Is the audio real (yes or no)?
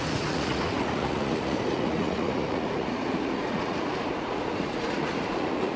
no